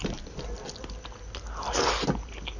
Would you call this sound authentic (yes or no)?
yes